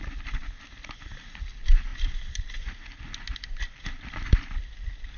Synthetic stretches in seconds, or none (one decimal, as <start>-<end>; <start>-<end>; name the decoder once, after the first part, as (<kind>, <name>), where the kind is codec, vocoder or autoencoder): 1.9-2.6 (vocoder, BigVGAN v2); 3.5-5.2